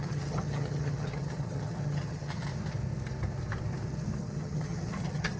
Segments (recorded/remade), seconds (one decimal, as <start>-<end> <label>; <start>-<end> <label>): 0.0-2.5 remade; 2.5-4.2 recorded; 4.2-5.4 remade